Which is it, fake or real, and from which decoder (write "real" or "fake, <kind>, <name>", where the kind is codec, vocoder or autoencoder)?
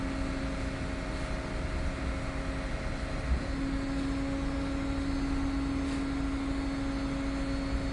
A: real